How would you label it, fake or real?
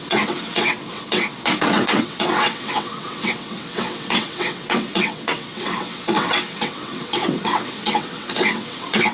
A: fake